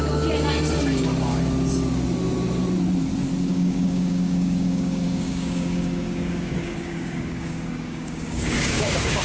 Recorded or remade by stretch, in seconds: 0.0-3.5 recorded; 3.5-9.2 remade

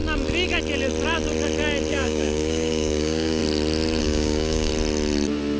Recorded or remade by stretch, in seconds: 0.0-1.9 recorded; 1.9-3.4 remade; 3.4-4.0 recorded; 4.0-4.7 remade; 4.7-5.6 recorded

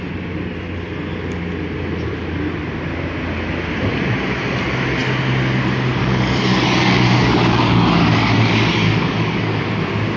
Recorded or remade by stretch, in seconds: 0.0-6.0 recorded; 6.0-9.6 remade; 9.6-10.2 recorded

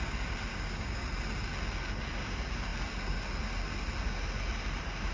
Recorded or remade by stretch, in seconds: 0.0-0.5 recorded; 0.5-1.0 remade; 1.0-5.1 recorded

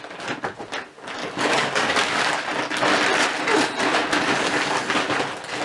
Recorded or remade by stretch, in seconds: 0.0-1.2 recorded; 1.2-2.2 remade; 2.2-5.6 recorded